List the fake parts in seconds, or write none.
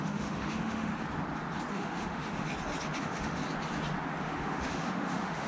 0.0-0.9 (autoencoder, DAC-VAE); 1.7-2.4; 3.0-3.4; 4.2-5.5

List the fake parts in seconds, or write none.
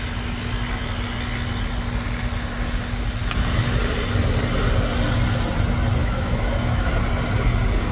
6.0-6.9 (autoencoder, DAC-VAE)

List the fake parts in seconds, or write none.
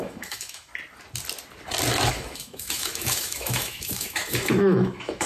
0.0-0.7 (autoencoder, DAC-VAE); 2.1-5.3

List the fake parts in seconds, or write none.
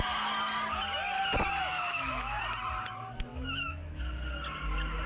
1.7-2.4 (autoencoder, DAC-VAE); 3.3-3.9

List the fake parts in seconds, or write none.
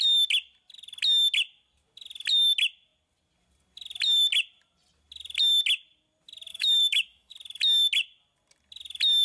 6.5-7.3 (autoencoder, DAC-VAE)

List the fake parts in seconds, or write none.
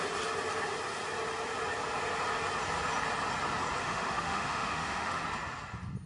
3.8-5.2 (autoencoder, DAC-VAE)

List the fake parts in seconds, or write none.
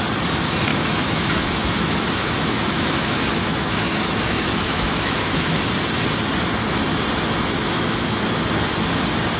0.7-5.6 (autoencoder, DAC-VAE); 7.6-8.2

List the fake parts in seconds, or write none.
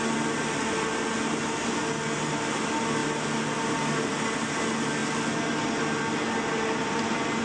none